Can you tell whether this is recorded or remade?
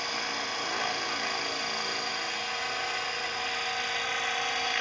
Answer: recorded